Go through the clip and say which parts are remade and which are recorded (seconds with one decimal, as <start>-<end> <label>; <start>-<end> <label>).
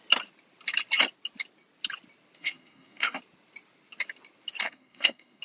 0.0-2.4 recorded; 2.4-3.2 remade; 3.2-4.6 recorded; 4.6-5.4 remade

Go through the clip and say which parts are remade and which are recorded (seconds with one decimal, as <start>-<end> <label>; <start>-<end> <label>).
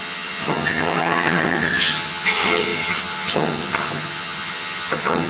0.0-5.3 remade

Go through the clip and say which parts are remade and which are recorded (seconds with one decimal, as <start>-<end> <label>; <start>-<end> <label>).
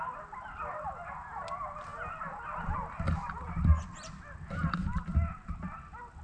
0.0-6.2 recorded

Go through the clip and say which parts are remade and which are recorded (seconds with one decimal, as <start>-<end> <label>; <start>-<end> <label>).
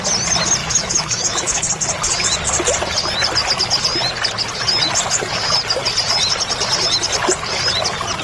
0.0-0.6 recorded; 0.6-1.6 remade; 1.6-8.2 recorded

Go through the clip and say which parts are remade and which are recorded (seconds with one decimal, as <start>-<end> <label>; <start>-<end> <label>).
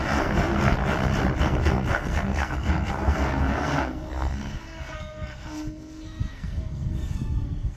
0.0-0.8 remade; 0.8-1.4 recorded; 1.4-7.8 remade